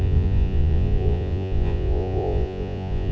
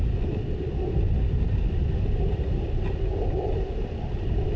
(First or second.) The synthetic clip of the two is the first